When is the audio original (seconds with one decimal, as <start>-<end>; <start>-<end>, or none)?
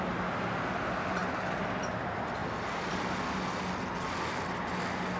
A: 0.0-5.2